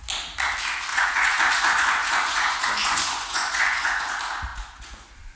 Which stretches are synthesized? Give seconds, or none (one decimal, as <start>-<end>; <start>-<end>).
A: 0.9-4.1; 4.5-5.4